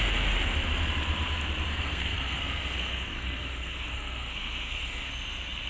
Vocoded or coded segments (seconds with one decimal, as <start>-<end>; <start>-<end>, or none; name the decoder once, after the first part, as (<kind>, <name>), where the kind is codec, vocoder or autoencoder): 1.7-5.1 (codec, SNAC)